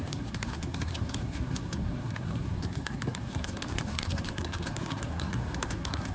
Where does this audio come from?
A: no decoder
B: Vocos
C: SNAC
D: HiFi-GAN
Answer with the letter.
C